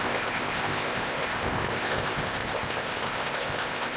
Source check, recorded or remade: remade